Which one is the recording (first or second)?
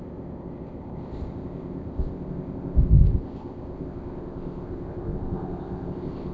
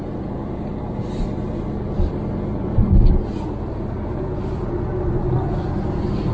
second